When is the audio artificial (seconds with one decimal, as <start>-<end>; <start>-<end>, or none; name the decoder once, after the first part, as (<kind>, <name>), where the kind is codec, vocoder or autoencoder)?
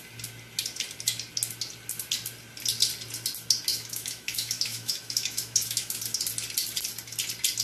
3.7-6.0 (autoencoder, DAC-VAE)